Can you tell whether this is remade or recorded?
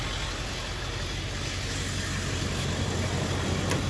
recorded